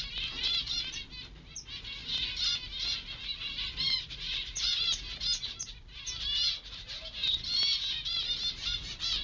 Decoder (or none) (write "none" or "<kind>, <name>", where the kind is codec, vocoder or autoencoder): none